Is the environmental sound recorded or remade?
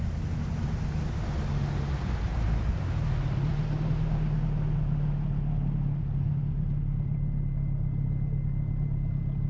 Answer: recorded